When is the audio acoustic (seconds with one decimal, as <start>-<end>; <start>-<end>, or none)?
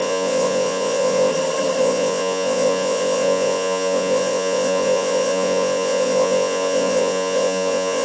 1.3-1.8